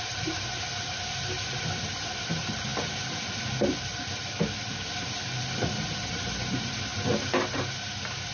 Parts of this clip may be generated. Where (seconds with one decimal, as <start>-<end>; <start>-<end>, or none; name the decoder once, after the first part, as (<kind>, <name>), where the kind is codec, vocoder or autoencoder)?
none